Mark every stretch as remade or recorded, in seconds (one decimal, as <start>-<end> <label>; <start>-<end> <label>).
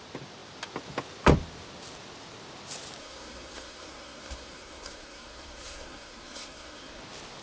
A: 0.0-3.0 recorded; 3.0-7.0 remade; 7.0-7.4 recorded